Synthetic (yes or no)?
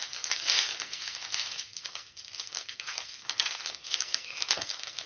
yes